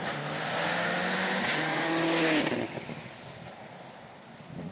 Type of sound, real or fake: real